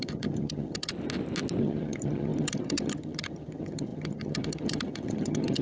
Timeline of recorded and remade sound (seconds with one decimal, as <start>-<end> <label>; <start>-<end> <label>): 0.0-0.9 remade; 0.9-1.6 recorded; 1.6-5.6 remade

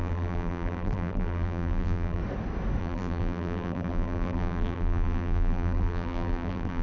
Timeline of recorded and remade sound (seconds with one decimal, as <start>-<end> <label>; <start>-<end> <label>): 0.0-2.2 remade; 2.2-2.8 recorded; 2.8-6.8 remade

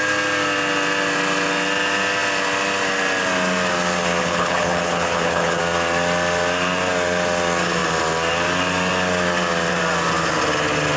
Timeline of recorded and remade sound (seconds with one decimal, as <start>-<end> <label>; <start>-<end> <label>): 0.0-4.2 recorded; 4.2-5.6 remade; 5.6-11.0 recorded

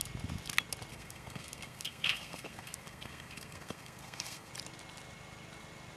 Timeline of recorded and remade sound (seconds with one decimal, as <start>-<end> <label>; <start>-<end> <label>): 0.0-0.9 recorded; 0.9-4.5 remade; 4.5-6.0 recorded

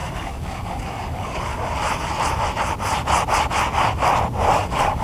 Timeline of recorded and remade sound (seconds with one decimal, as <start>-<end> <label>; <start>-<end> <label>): 0.0-1.5 remade; 1.5-4.5 recorded; 4.5-5.0 remade